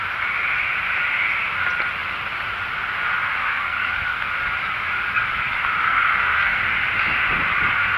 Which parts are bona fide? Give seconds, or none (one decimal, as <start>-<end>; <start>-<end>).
0.0-3.4; 4.3-5.8; 6.6-8.0